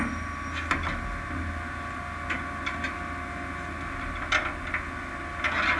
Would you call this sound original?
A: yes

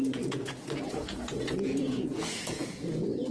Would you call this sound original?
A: no